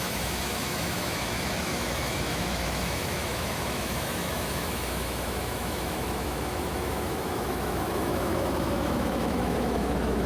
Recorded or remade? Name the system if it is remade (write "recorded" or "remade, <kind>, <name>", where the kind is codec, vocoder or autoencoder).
remade, autoencoder, DAC-VAE